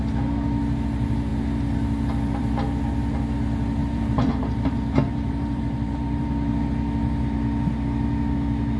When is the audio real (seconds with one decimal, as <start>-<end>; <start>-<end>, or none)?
0.0-3.8; 6.3-8.8